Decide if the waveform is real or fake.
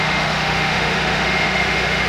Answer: fake